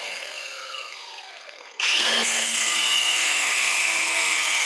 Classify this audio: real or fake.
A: fake